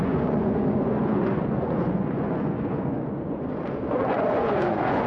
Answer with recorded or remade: remade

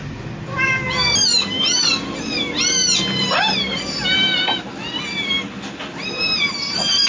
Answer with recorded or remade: recorded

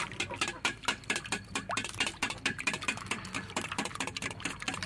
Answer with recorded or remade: recorded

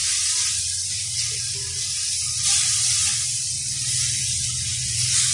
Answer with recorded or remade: recorded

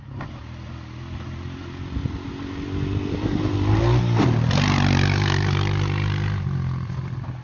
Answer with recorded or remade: recorded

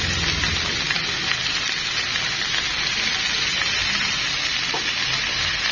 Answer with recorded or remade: recorded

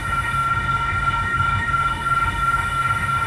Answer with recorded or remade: remade